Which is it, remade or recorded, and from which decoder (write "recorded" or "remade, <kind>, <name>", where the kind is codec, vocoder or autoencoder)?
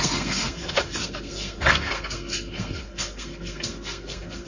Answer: remade, codec, SNAC